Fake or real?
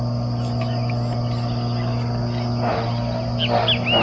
real